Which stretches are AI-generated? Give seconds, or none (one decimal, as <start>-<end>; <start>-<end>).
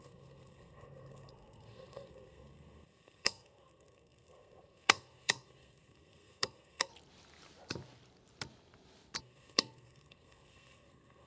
0.0-6.9; 9.2-11.3